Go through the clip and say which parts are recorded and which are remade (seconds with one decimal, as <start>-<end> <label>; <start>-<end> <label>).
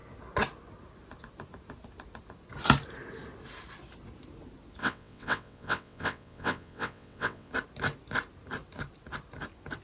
0.0-4.8 recorded; 4.8-7.5 remade; 7.5-9.8 recorded